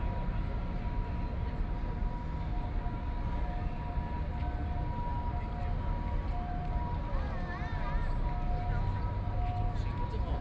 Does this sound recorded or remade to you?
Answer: recorded